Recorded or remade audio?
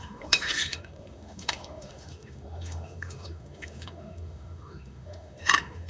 remade